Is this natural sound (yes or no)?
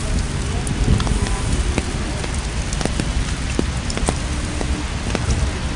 yes